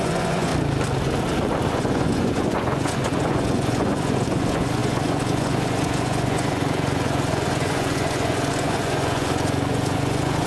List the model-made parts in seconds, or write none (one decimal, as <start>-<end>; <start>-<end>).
0.0-0.5; 1.7-10.5